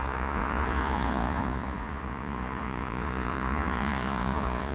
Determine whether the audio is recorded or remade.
remade